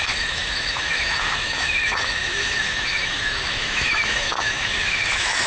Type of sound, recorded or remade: remade